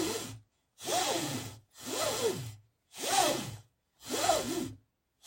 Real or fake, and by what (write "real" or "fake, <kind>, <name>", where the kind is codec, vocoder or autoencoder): fake, vocoder, Vocos